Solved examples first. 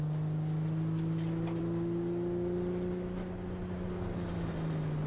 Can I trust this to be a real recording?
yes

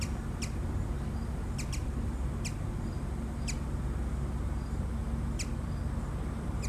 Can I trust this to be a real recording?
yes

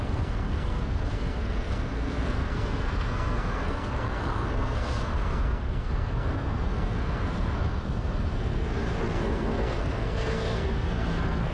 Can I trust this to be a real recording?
no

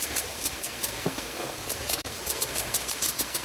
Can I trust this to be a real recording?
no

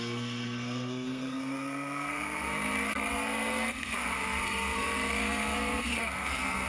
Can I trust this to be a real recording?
no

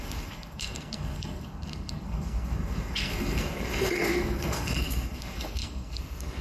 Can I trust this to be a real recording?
no